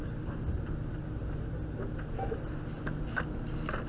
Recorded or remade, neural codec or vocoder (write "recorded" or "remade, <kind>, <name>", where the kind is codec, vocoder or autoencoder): recorded